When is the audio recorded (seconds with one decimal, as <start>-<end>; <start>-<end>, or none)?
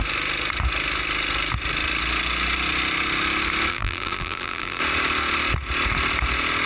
0.0-3.7; 4.8-6.7